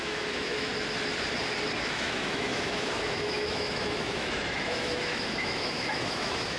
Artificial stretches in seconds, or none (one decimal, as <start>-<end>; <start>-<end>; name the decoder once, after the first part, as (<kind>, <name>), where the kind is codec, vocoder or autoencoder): 0.0-0.7 (autoencoder, DAC-VAE); 1.9-6.6